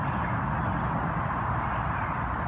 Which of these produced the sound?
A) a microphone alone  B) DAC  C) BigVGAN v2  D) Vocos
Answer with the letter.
A